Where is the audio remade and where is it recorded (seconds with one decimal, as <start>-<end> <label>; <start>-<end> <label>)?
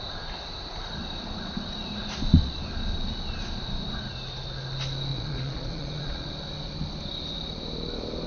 0.0-5.1 recorded; 5.1-6.3 remade; 6.3-8.3 recorded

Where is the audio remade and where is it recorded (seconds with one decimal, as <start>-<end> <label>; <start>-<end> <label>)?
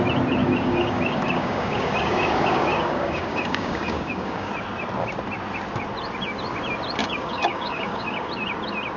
0.0-0.4 recorded; 0.4-4.5 remade; 4.5-7.0 recorded; 7.0-8.3 remade; 8.3-9.0 recorded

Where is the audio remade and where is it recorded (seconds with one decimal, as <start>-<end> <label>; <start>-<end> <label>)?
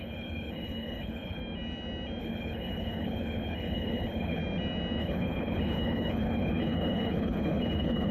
0.0-1.4 remade; 1.4-2.2 recorded; 2.2-4.4 remade; 4.4-5.0 recorded; 5.0-8.1 remade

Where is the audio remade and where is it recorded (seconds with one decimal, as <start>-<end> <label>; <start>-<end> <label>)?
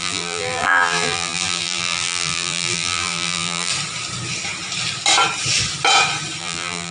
0.0-3.7 remade; 3.7-6.4 recorded; 6.4-6.9 remade